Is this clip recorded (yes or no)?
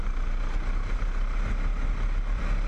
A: yes